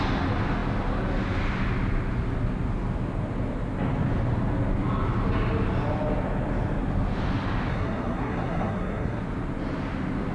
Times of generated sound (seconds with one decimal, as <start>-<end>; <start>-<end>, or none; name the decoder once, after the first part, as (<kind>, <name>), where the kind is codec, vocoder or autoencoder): 7.7-9.2 (codec, SNAC)